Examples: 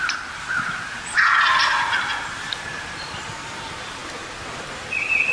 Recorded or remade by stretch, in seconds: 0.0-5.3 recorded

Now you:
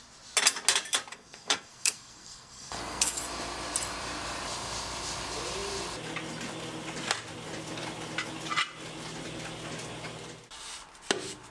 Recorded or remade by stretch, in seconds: 0.0-1.1 recorded; 1.1-3.2 remade; 3.2-11.5 recorded

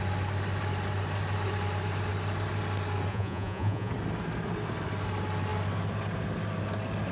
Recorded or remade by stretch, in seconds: 0.0-3.1 recorded; 3.1-3.9 remade; 3.9-7.1 recorded

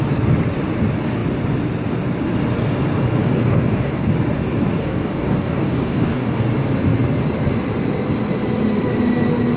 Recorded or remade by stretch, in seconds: 0.0-3.2 recorded; 3.2-4.1 remade; 4.1-4.8 recorded; 4.8-6.4 remade; 6.4-9.6 recorded

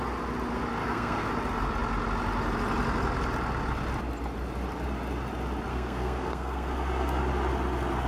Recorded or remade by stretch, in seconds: 0.0-0.8 recorded; 0.8-1.3 remade; 1.3-5.7 recorded; 5.7-7.2 remade; 7.2-8.1 recorded

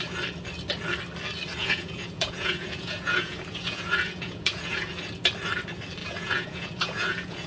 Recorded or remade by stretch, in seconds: 0.0-1.6 recorded; 1.6-4.9 remade; 4.9-6.0 recorded; 6.0-7.5 remade

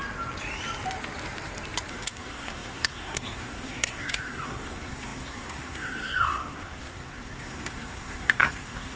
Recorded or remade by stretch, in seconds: 0.0-1.9 recorded; 1.9-9.0 remade

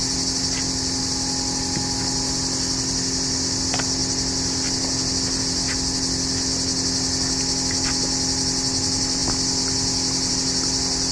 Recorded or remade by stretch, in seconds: 0.0-11.1 recorded